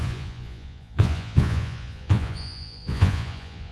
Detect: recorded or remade remade